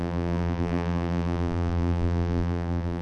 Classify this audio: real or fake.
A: fake